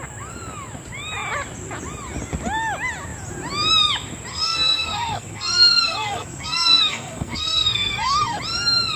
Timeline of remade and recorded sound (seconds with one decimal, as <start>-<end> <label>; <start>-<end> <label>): 0.0-4.3 recorded; 4.3-8.4 remade; 8.4-9.0 recorded

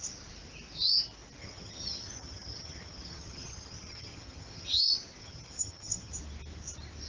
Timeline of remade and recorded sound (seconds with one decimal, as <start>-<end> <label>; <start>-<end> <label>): 0.0-1.4 recorded; 1.4-4.8 remade; 4.8-5.2 recorded; 5.2-6.1 remade; 6.1-7.1 recorded

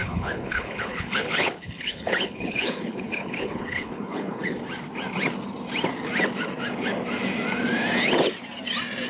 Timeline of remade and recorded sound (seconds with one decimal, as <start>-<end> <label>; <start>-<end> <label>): 0.0-4.6 remade; 4.6-9.1 recorded

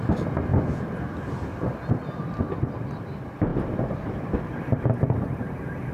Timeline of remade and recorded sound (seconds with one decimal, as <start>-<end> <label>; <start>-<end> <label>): 0.0-5.9 recorded

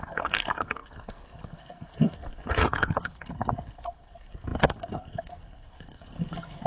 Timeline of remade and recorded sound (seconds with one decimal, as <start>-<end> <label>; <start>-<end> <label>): 0.0-6.7 remade

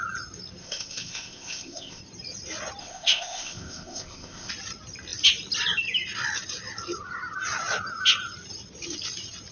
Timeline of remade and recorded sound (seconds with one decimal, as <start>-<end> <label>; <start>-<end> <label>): 0.0-0.6 recorded; 0.6-2.0 remade; 2.0-2.8 recorded; 2.8-4.5 remade; 4.5-9.5 recorded

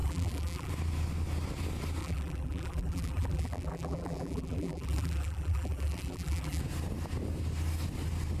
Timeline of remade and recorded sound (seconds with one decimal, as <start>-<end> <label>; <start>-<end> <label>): 0.0-0.7 remade; 0.7-2.0 recorded; 2.0-6.6 remade; 6.6-8.4 recorded